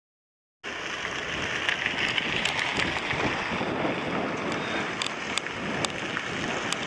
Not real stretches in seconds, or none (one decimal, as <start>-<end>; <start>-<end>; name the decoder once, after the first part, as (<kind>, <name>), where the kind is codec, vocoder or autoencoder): none